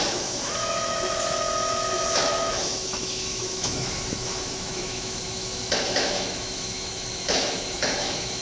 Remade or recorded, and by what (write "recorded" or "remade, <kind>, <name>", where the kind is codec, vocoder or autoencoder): remade, autoencoder, DAC-VAE